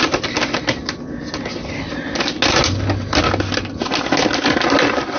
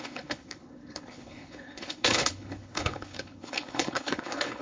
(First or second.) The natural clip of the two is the first